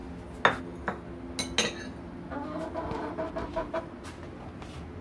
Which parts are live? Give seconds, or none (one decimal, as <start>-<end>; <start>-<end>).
0.0-5.0